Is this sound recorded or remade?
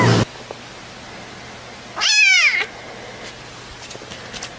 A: recorded